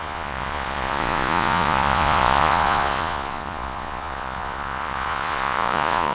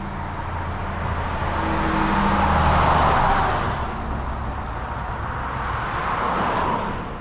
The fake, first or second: first